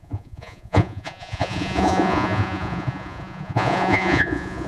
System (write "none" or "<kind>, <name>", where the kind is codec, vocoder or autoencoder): vocoder, Vocos